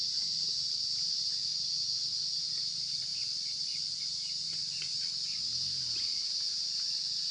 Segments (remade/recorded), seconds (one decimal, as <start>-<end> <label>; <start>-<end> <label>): 0.0-7.3 recorded

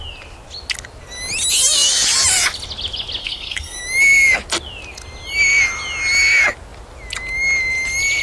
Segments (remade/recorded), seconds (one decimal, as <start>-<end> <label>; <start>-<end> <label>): 0.0-3.2 recorded; 3.2-3.8 remade; 3.8-8.2 recorded

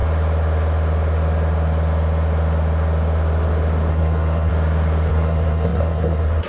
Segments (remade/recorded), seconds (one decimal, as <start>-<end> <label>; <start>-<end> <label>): 0.0-3.9 recorded; 3.9-4.5 remade; 4.5-5.1 recorded; 5.1-6.5 remade

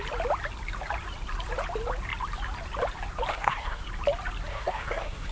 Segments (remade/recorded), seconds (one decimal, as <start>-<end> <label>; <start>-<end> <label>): 0.0-3.3 recorded; 3.3-3.8 remade; 3.8-4.5 recorded; 4.5-5.3 remade

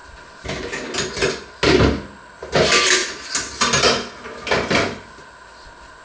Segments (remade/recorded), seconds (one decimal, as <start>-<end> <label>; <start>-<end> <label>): 0.0-6.0 recorded

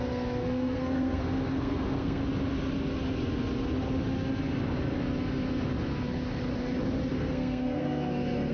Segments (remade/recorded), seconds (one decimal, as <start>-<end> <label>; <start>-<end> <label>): 0.0-2.2 remade; 2.2-7.1 recorded; 7.1-8.5 remade